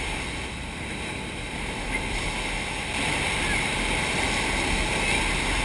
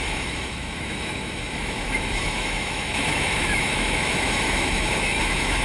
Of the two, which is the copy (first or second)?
second